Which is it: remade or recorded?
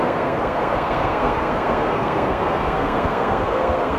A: remade